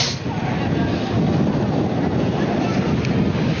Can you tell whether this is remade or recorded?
recorded